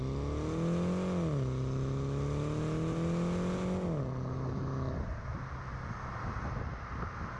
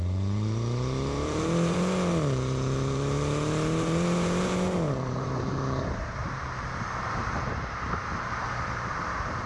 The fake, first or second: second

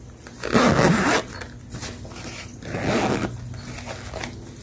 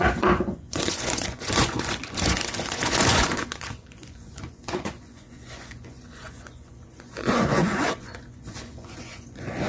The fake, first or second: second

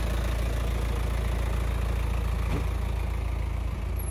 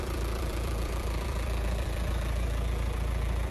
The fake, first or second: second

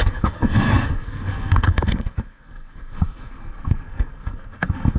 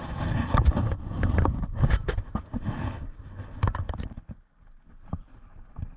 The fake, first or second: first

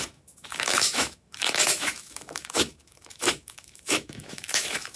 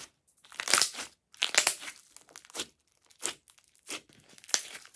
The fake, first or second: first